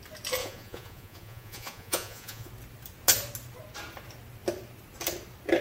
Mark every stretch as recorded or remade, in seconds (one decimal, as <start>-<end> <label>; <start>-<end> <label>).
0.0-0.4 recorded; 0.4-2.5 remade; 2.5-5.6 recorded